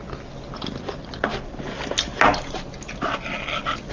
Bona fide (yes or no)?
yes